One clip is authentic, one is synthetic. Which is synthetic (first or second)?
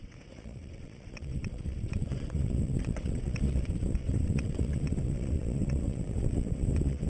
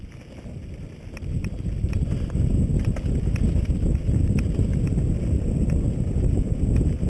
first